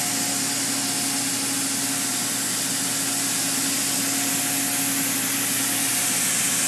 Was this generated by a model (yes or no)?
no